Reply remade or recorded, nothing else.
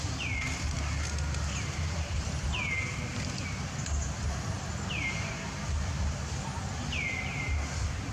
recorded